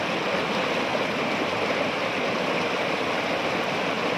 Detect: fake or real real